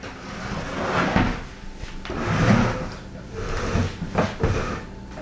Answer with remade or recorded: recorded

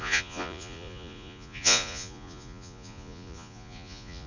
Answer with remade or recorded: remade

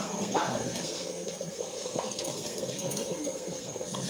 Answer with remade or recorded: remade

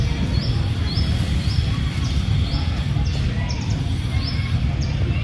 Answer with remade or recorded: recorded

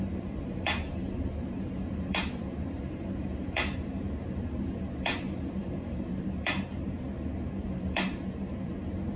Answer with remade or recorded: remade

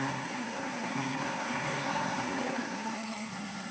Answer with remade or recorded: remade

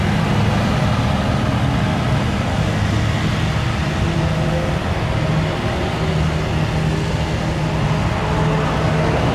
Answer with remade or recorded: recorded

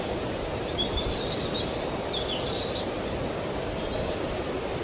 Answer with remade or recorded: recorded